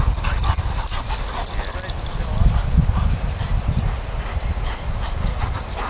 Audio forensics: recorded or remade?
recorded